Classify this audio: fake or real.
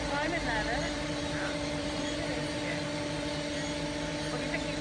fake